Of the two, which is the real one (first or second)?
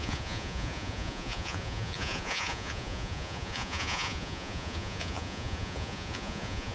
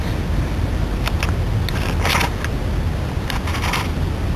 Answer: second